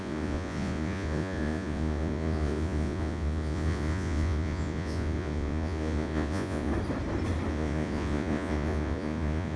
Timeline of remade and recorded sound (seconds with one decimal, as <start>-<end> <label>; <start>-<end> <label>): 0.0-6.7 remade; 6.7-7.5 recorded; 7.5-9.6 remade